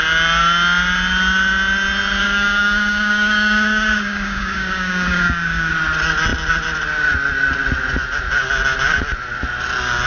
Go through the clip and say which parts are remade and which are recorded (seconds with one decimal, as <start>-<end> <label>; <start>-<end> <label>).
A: 0.0-2.2 recorded; 2.2-5.7 remade; 5.7-10.1 recorded